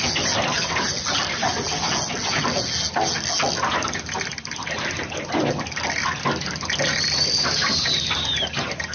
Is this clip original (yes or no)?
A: yes